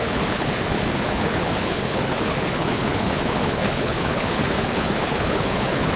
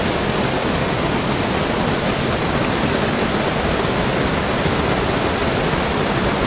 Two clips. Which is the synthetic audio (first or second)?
first